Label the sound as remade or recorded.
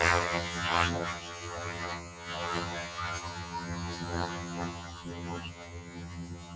remade